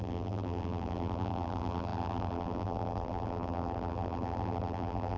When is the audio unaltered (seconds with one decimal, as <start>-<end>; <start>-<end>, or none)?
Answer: none